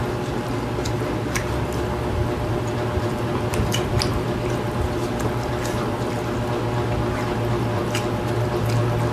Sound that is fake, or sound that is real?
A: fake